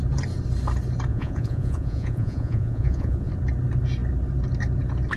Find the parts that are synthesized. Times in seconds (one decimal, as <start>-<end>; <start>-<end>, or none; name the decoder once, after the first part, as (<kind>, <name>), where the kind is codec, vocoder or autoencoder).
1.1-3.3 (vocoder, Vocos)